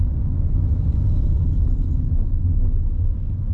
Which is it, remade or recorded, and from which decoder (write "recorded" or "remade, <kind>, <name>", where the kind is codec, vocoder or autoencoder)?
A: recorded